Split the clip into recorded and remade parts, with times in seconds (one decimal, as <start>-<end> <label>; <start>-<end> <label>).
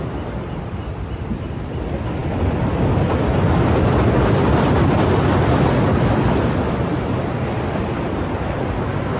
0.0-9.2 recorded